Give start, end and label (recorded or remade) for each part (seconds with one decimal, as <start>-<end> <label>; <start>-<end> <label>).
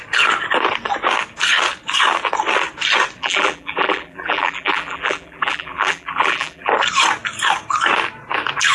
0.0-3.2 recorded; 3.2-6.7 remade; 6.7-8.7 recorded